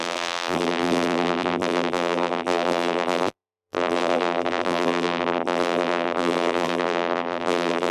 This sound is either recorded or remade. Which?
remade